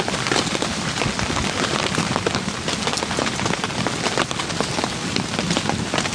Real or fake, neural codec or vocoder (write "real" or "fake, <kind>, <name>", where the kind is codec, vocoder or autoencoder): real